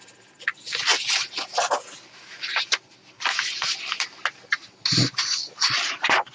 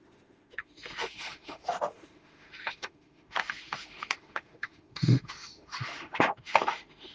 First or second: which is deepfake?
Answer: second